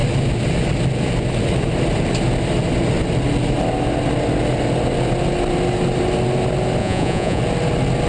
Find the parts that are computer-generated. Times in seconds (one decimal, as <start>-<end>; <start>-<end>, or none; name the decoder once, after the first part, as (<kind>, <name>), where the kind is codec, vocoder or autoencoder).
6.8-7.4 (vocoder, Vocos)